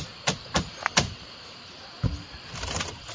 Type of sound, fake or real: real